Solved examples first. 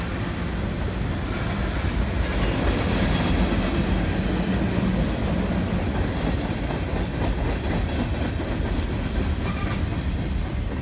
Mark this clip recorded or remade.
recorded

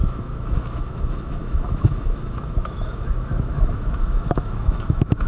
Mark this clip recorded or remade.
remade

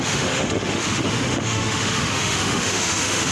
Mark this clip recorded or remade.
remade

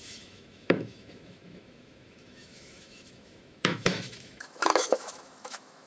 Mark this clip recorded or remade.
remade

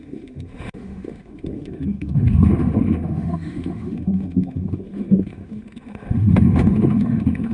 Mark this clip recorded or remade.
remade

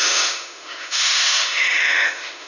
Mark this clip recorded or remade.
remade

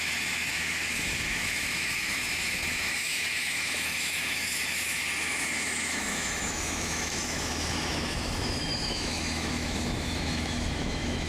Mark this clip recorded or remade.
remade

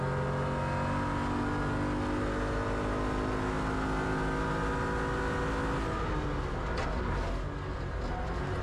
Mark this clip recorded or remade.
recorded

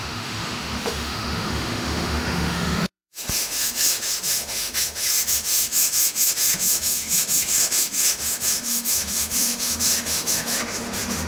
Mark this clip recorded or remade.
remade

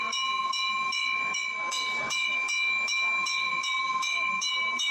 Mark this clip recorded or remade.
remade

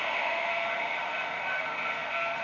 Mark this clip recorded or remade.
remade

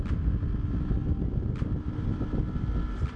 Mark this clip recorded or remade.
recorded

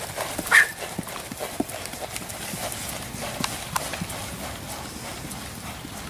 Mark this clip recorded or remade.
recorded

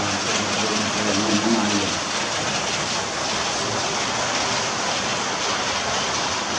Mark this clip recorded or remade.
recorded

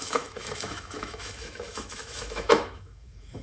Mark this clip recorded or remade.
remade